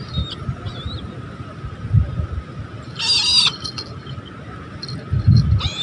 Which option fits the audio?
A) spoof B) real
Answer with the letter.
B